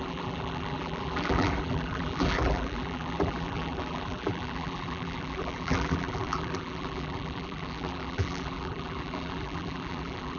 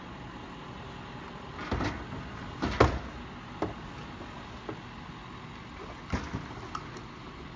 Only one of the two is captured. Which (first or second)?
second